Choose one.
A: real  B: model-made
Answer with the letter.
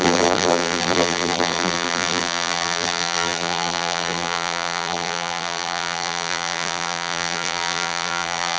B